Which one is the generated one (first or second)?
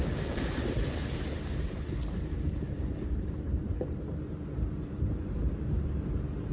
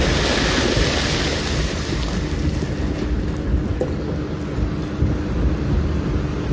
first